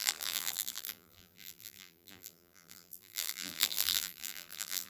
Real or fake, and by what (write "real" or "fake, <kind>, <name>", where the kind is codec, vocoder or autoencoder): fake, vocoder, BigVGAN v2